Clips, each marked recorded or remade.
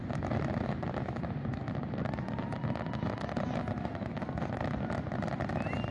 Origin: recorded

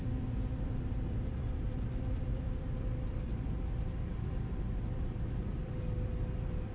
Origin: remade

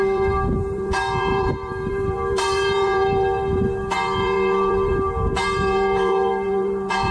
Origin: remade